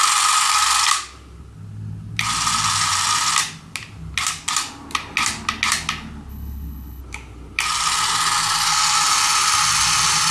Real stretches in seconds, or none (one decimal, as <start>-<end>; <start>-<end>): 0.0-6.3; 7.0-10.3